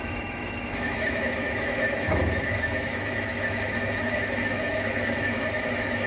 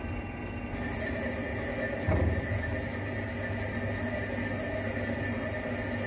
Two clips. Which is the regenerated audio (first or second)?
first